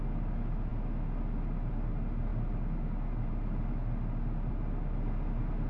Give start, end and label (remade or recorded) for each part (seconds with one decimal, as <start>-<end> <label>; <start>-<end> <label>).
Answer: 0.0-5.7 recorded